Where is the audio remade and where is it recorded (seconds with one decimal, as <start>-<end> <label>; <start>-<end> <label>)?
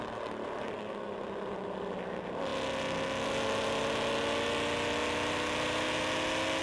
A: 0.0-6.6 recorded